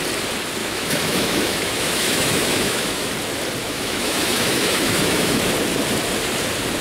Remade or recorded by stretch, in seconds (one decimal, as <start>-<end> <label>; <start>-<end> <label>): 0.0-0.6 recorded; 0.6-3.1 remade; 3.1-3.6 recorded; 3.6-5.4 remade; 5.4-6.8 recorded